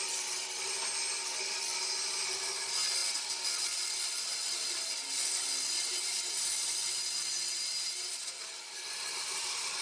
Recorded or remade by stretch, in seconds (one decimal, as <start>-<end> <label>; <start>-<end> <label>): 0.0-9.8 recorded